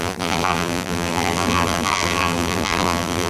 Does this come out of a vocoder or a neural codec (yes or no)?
yes